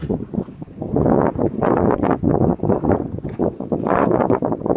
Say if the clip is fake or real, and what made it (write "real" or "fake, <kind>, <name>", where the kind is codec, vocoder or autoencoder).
fake, vocoder, Vocos